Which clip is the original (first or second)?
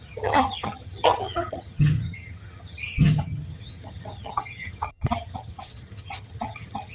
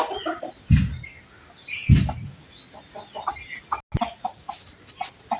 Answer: second